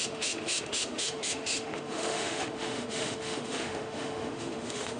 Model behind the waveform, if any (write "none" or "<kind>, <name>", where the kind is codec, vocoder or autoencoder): autoencoder, DAC-VAE